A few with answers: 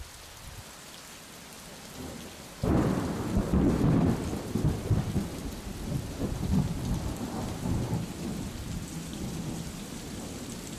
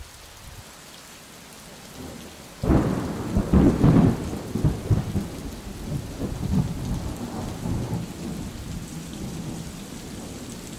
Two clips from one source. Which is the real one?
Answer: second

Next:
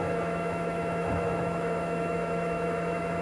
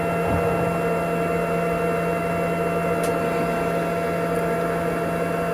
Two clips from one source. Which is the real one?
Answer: second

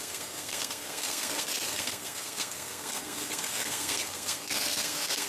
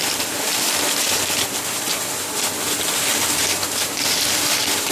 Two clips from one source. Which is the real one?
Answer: second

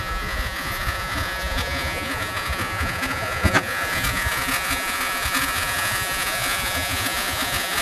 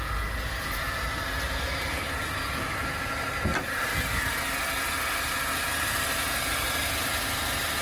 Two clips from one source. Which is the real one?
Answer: second